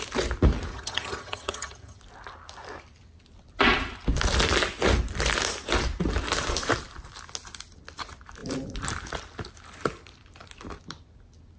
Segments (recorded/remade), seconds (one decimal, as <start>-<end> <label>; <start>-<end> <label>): 0.0-0.7 recorded; 0.7-2.0 remade; 2.0-11.6 recorded